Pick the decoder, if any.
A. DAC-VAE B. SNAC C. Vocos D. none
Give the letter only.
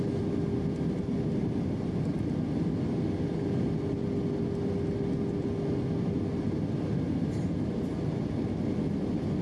D